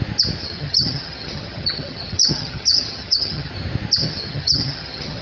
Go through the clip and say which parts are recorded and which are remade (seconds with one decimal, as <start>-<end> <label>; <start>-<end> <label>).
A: 0.0-0.4 recorded; 0.4-3.5 remade; 3.5-4.0 recorded; 4.0-5.2 remade